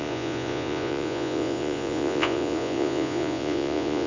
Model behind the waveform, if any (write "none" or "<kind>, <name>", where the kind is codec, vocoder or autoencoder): vocoder, Vocos